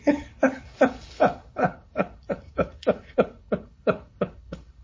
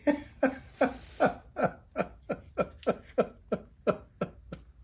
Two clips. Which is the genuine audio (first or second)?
second